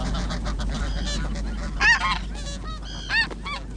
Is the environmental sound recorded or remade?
recorded